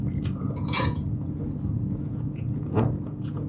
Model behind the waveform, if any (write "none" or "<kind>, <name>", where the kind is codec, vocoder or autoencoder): vocoder, Vocos